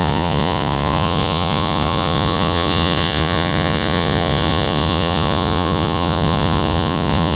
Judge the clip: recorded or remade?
remade